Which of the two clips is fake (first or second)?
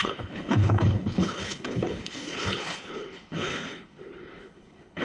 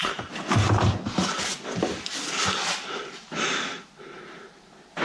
first